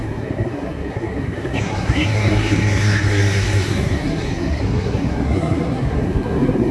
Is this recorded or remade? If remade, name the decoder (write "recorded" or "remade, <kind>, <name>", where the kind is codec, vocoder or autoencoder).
remade, codec, SNAC